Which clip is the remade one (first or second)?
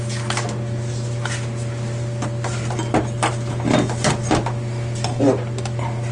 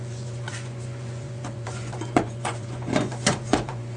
second